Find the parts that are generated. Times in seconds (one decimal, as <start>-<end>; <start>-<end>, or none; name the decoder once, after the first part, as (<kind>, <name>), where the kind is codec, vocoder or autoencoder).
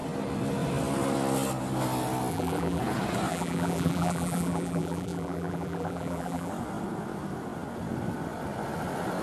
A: 2.3-2.8 (vocoder, BigVGAN v2); 3.3-6.5